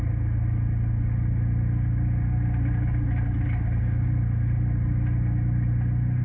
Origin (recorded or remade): recorded